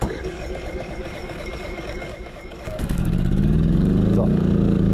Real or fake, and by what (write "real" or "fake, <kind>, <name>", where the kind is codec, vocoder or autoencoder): fake, codec, DAC